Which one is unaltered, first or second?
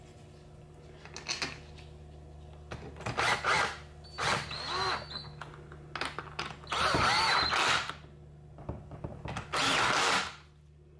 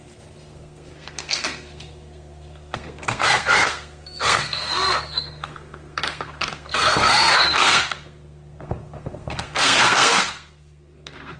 first